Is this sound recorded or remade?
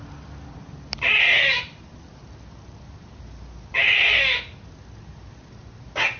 recorded